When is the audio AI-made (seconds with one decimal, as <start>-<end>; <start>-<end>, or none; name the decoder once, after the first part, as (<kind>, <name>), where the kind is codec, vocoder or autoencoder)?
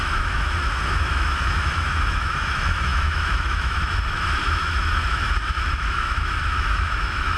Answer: 0.0-7.4 (autoencoder, DAC-VAE)